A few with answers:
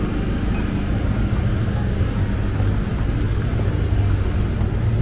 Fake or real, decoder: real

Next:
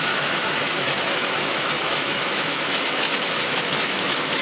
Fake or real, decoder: fake, autoencoder, DAC-VAE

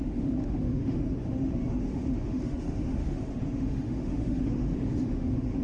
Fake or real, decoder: fake, autoencoder, DAC-VAE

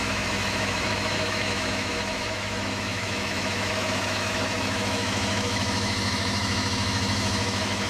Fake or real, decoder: fake, autoencoder, DAC-VAE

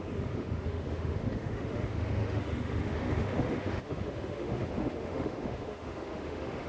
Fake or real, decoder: fake, autoencoder, DAC-VAE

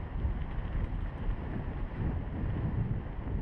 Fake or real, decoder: real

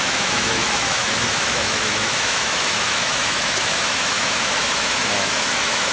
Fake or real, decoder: fake, autoencoder, DAC-VAE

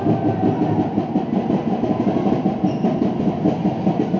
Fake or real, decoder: real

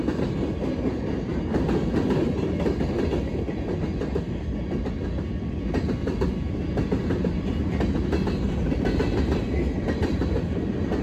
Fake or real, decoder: real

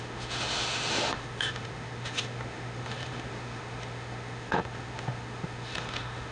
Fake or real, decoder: fake, autoencoder, DAC-VAE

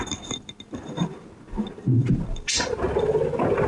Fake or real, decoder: real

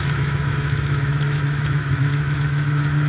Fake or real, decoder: fake, autoencoder, DAC-VAE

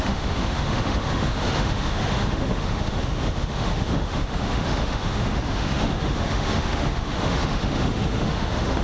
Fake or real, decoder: fake, autoencoder, DAC-VAE